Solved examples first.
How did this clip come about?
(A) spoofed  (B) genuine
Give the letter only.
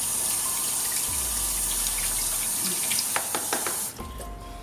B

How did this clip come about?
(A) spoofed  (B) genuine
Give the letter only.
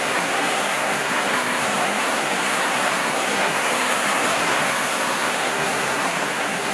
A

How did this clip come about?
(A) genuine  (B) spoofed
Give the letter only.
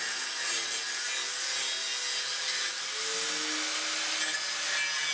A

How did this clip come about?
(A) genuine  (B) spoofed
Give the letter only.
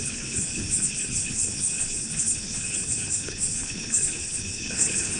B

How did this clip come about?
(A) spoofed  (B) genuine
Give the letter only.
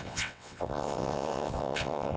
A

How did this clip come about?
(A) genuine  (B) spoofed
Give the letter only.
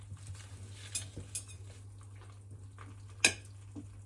A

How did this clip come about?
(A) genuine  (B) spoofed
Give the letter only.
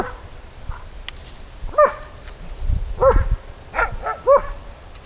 A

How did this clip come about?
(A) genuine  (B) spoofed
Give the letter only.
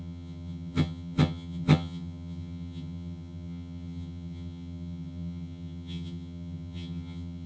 B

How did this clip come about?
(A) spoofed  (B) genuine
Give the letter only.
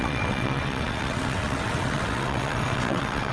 A